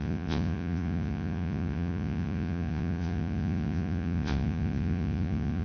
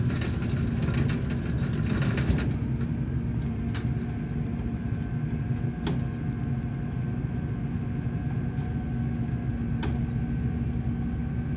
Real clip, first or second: second